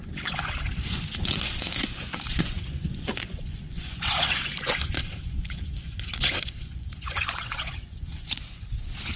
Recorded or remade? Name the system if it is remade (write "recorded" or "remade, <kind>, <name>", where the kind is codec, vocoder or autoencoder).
remade, vocoder, Vocos